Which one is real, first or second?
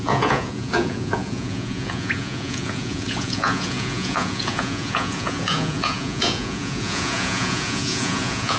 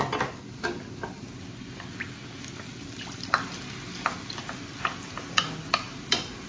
second